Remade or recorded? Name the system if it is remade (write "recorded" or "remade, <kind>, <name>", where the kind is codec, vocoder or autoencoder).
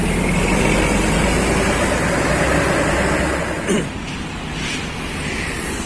recorded